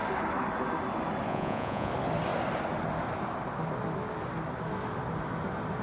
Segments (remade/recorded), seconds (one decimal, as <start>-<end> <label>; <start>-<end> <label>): 0.0-1.3 recorded; 1.3-1.9 remade; 1.9-5.8 recorded